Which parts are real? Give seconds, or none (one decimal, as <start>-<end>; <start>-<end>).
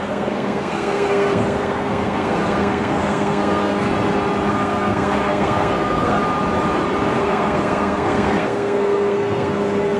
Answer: 3.9-4.5; 6.2-7.2